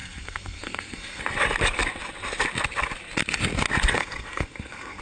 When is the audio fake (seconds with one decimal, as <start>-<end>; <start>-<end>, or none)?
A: 0.0-1.2; 4.0-5.0